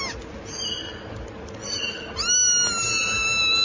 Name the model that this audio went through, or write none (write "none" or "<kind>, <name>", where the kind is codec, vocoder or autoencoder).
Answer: none